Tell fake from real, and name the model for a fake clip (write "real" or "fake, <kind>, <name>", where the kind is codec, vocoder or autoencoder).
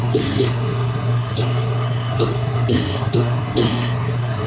fake, codec, SNAC